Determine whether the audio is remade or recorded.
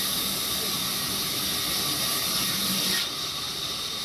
recorded